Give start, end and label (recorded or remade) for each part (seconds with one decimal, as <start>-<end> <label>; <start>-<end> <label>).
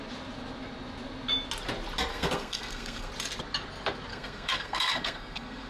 0.0-2.1 recorded; 2.1-3.1 remade; 3.1-4.1 recorded; 4.1-5.7 remade